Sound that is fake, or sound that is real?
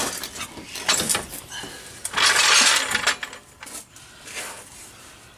real